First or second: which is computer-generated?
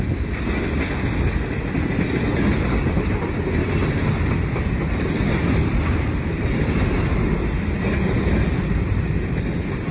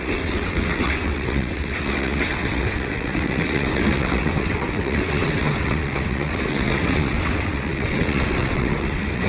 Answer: second